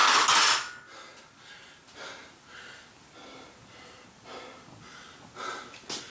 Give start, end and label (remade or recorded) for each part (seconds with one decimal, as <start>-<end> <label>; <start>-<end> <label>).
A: 0.0-6.1 recorded